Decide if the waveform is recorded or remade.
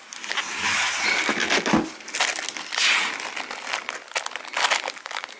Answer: recorded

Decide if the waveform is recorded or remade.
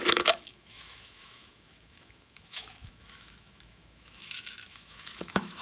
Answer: remade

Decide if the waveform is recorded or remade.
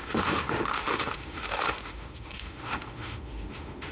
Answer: remade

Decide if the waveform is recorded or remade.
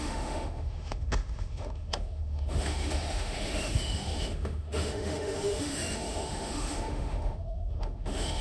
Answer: remade